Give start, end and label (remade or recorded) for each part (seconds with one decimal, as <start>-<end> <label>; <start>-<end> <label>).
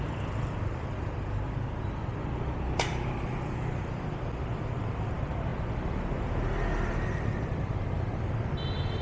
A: 0.0-9.0 recorded